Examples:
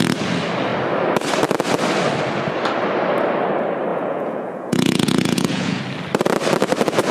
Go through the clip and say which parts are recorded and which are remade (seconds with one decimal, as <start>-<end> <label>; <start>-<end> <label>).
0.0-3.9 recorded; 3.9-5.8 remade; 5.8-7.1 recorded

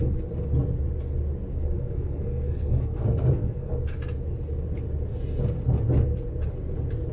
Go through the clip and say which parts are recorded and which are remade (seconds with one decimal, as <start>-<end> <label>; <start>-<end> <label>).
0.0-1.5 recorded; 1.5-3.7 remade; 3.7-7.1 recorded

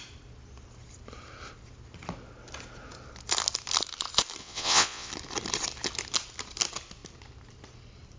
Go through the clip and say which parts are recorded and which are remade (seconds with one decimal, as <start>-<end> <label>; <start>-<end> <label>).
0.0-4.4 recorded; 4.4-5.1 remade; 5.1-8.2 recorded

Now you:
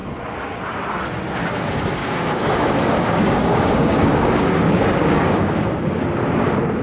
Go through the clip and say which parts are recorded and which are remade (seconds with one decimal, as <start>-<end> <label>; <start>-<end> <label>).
0.0-2.0 recorded; 2.0-6.0 remade; 6.0-6.8 recorded